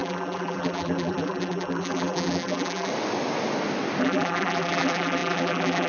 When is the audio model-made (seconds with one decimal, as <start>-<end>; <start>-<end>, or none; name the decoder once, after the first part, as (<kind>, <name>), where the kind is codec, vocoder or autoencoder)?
0.0-2.9 (vocoder, BigVGAN v2); 4.0-5.9